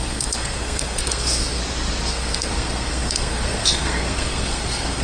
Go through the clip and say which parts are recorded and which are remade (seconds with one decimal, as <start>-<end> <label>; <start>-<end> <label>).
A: 0.0-1.6 remade; 1.6-2.1 recorded; 2.1-5.0 remade